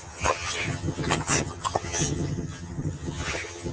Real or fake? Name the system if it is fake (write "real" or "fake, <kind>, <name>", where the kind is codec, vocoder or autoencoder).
fake, vocoder, HiFi-GAN